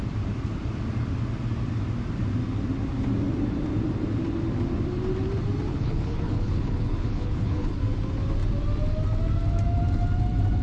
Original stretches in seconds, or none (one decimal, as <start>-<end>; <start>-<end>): 0.0-5.7; 7.8-10.6